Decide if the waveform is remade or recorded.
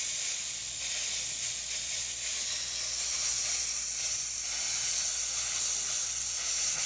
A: recorded